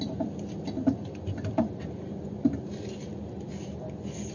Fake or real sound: real